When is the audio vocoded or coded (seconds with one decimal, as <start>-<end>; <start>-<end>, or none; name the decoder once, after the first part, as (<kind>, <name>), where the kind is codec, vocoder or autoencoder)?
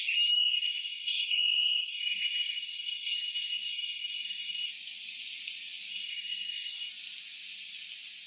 0.4-4.7 (codec, SNAC); 5.9-6.9